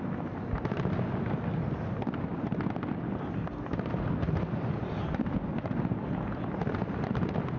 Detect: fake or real real